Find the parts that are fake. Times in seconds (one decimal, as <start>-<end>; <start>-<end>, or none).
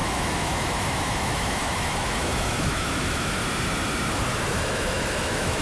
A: 0.0-3.4; 4.5-5.6